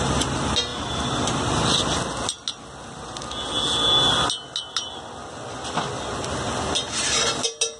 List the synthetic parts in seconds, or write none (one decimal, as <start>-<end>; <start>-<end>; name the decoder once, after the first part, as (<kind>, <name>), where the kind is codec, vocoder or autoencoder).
none